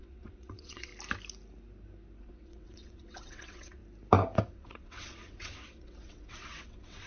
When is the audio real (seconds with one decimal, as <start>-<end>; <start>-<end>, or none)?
0.9-2.2; 3.8-4.4